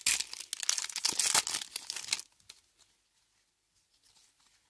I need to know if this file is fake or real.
real